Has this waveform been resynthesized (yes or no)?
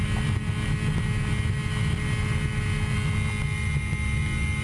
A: no